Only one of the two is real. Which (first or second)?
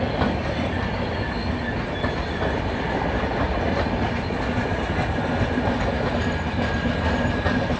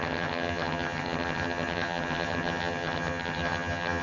first